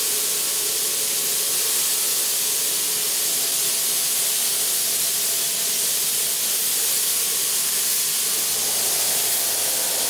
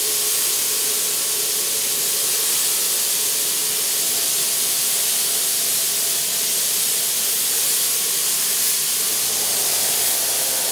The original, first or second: first